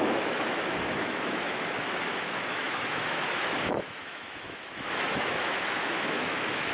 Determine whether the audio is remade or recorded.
remade